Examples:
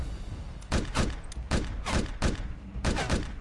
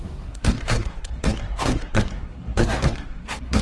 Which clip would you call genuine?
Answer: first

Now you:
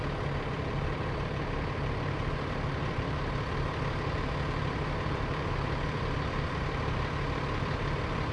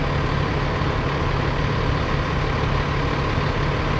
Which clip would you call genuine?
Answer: second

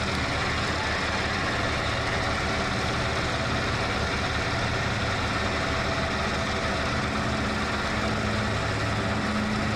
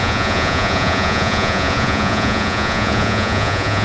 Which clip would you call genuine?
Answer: first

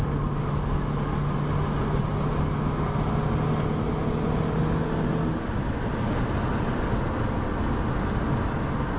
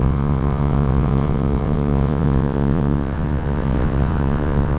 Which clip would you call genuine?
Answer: first